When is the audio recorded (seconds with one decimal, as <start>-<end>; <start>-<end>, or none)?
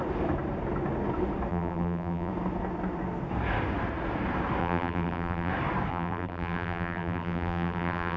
0.0-1.5; 2.3-4.6; 5.5-5.9